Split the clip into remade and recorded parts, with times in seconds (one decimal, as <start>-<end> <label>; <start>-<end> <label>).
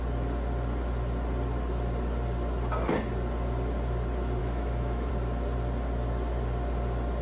0.0-4.4 recorded; 4.4-5.1 remade; 5.1-7.2 recorded